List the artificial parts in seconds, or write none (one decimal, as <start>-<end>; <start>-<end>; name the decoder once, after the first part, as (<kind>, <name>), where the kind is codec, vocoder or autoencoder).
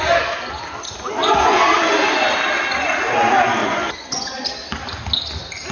1.2-1.8 (vocoder, Vocos); 3.6-4.4